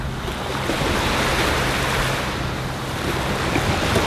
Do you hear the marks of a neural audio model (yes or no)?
no